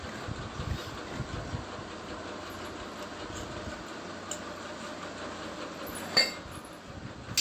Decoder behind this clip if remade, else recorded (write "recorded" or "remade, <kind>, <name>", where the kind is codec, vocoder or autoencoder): recorded